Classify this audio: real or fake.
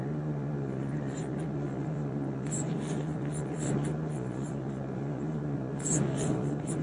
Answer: fake